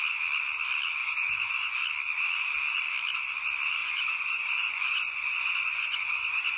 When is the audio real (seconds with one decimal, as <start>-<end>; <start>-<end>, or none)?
0.0-1.0; 1.8-3.8